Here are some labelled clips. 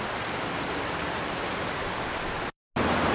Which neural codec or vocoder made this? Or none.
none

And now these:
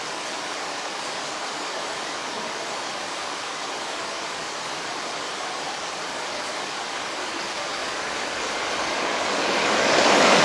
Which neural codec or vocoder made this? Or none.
codec, DAC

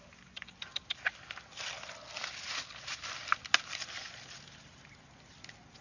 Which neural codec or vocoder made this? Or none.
none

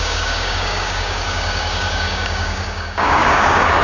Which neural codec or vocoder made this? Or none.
codec, DAC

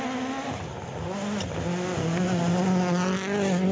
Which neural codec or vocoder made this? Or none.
none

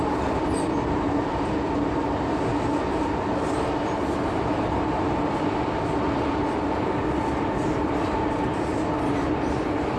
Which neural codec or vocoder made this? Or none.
none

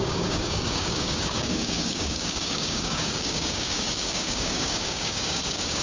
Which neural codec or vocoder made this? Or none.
codec, DAC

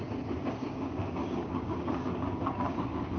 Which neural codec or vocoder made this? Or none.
codec, DAC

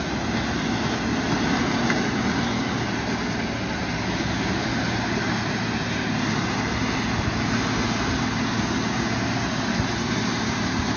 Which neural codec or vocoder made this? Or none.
none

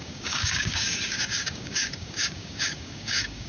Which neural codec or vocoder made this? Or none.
codec, DAC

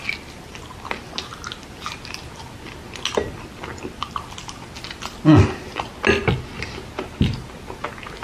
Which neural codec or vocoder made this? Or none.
none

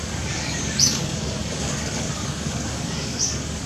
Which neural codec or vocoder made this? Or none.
codec, DAC